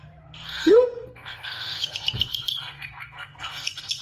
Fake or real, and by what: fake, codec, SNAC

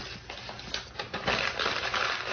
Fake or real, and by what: real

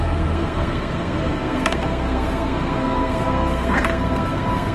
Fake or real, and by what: fake, codec, SNAC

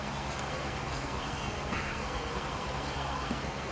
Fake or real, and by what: fake, codec, SNAC